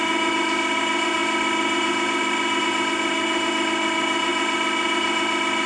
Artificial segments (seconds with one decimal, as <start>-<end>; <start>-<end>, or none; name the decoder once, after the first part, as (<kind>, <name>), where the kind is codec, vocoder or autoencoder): none